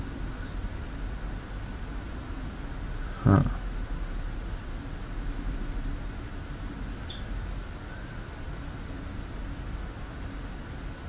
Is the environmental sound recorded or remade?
recorded